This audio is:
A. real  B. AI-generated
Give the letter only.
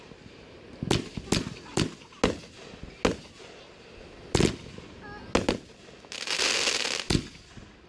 A